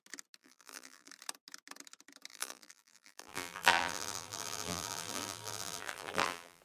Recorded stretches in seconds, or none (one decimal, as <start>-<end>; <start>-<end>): 0.0-0.4; 1.1-2.3